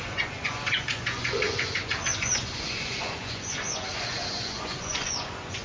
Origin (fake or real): fake